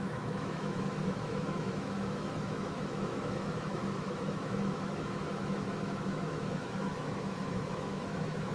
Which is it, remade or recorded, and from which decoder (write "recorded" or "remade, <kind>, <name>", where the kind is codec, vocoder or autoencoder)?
remade, autoencoder, DAC-VAE